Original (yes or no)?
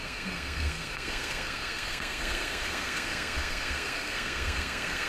no